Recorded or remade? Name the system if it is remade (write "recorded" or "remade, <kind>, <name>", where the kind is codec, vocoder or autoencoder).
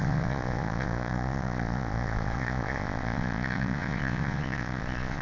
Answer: remade, vocoder, Vocos